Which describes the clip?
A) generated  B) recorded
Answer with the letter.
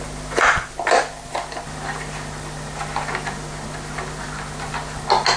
B